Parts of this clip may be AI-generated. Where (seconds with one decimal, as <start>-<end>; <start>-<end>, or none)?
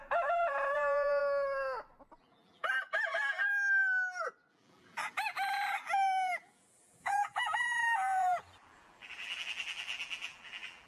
0.0-1.2; 2.2-3.8; 4.5-10.9